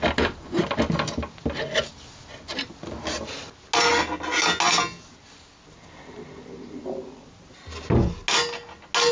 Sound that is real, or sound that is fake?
real